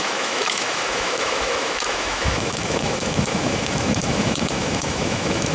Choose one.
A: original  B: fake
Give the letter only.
B